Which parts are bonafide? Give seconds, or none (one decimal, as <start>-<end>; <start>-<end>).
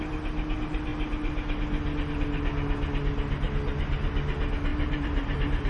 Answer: 0.0-4.7